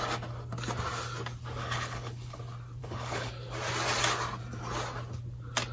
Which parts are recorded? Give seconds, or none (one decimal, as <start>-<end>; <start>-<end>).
0.0-1.6; 2.4-2.8; 3.3-5.7